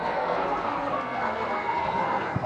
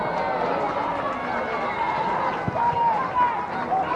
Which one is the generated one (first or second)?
first